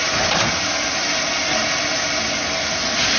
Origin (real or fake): real